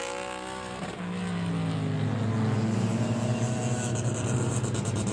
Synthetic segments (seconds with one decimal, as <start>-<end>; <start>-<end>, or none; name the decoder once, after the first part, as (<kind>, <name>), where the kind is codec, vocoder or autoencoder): none